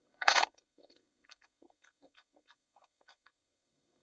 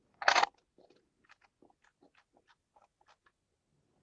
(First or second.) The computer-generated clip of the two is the first